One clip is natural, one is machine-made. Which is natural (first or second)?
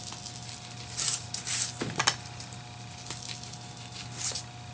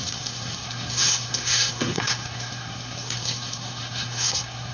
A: first